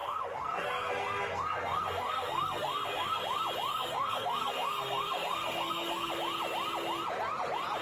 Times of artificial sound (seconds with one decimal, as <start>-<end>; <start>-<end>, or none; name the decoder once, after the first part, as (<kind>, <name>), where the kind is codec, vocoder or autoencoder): 0.0-3.2 (codec, SNAC); 3.7-6.1